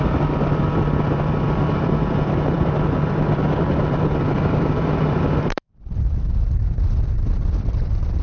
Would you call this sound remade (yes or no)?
yes